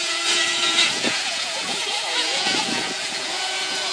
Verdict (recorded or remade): remade